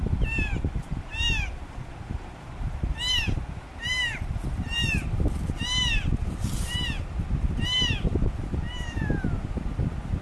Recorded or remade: remade